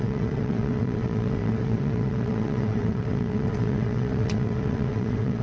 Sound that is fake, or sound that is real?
fake